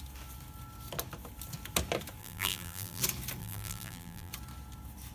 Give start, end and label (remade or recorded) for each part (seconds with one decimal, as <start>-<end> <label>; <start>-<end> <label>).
0.0-2.2 recorded; 2.2-3.0 remade; 3.0-3.4 recorded; 3.4-4.3 remade; 4.3-5.1 recorded